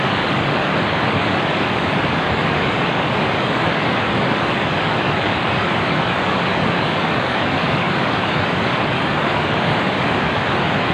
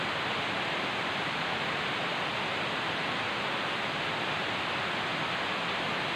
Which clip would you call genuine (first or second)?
second